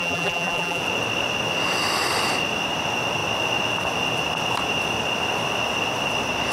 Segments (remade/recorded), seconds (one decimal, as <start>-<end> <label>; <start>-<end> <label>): 0.0-0.8 remade; 0.8-6.5 recorded